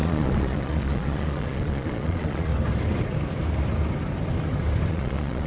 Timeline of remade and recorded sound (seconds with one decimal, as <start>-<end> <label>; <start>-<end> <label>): 0.0-2.5 remade; 2.5-4.9 recorded; 4.9-5.5 remade

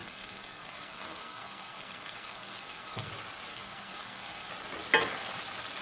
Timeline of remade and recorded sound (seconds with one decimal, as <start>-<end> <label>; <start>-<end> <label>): 0.0-3.1 remade; 3.1-3.5 recorded; 3.5-4.5 remade; 4.5-5.8 recorded